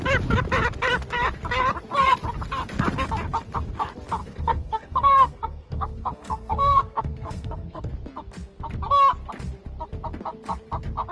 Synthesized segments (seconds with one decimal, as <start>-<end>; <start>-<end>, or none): 4.2-7.9